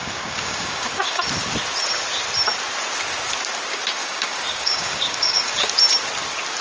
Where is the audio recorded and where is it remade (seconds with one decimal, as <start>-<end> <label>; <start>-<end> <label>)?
0.0-1.2 remade; 1.2-4.0 recorded; 4.0-5.7 remade; 5.7-6.6 recorded